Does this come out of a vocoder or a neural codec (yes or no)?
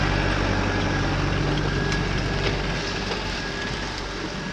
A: no